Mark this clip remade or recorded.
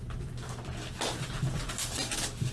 recorded